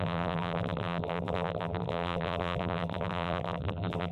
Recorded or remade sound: remade